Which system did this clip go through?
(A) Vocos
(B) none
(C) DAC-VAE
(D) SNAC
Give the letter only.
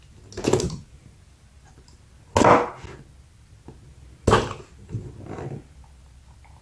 B